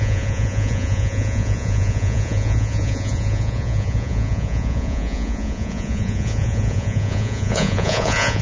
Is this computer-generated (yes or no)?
yes